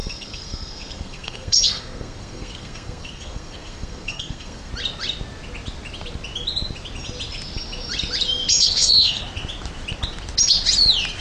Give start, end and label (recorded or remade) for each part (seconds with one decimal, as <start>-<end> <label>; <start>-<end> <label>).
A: 0.0-4.7 remade; 4.7-8.5 recorded; 8.5-9.2 remade; 9.2-11.2 recorded